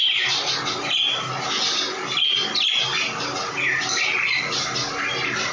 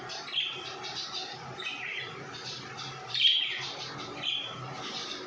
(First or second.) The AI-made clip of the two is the second